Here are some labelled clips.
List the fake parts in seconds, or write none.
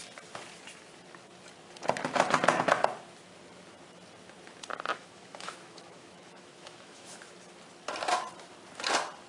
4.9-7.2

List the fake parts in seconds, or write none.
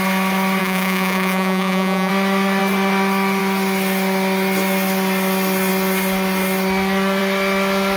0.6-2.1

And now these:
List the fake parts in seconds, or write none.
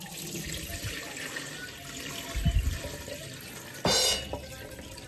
0.7-3.5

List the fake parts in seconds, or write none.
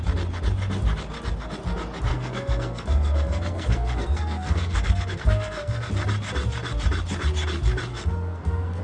2.1-5.9; 7.9-8.8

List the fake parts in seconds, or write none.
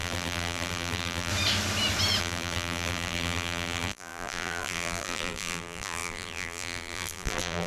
0.0-1.3; 2.2-7.7